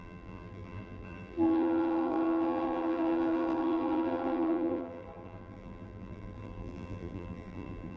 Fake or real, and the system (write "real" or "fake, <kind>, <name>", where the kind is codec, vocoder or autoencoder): fake, vocoder, BigVGAN v2